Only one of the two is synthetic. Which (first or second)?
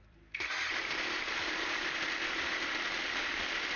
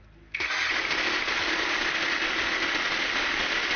first